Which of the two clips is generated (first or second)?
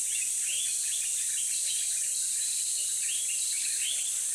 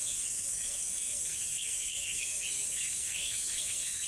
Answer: second